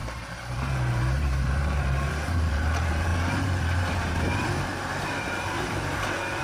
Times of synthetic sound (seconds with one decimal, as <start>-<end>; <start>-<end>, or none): 0.0-6.4